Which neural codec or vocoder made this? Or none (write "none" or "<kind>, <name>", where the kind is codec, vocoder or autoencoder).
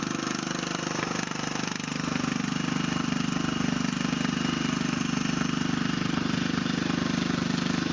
none